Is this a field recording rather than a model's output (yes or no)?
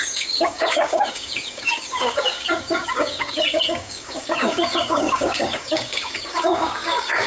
no